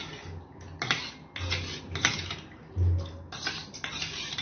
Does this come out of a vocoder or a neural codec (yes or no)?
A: no